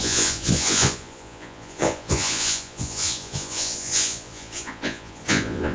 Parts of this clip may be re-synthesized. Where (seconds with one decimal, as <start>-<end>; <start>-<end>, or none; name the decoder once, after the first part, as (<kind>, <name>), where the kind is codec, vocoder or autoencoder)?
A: 0.0-5.7 (vocoder, Vocos)